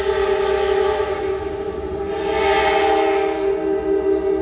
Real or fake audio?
real